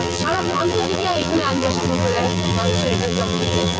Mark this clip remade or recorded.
remade